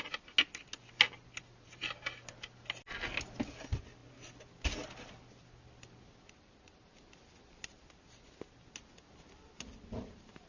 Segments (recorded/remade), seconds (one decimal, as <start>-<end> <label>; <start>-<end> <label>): 0.0-10.5 recorded